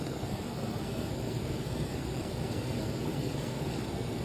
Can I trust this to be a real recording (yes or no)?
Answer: no